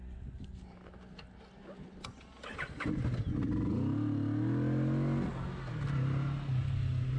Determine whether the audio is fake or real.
real